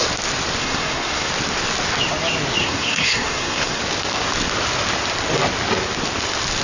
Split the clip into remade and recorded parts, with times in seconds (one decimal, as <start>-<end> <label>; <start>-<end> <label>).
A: 0.0-0.6 recorded; 0.6-1.3 remade; 1.3-2.6 recorded; 2.6-3.8 remade; 3.8-6.6 recorded